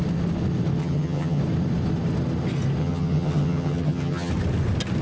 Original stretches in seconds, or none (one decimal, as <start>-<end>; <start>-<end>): 0.0-0.8; 1.4-2.8; 4.3-5.0